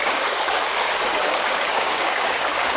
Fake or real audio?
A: fake